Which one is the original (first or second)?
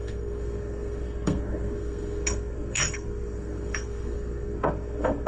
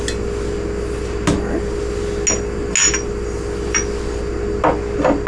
second